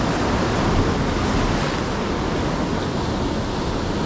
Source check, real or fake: real